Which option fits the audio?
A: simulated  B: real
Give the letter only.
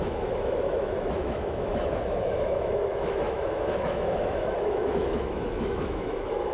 A